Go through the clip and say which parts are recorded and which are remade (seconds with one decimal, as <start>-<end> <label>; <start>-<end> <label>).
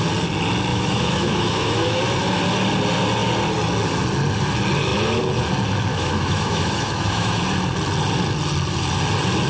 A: 0.0-0.7 recorded; 0.7-2.0 remade; 2.0-5.9 recorded; 5.9-7.4 remade; 7.4-9.5 recorded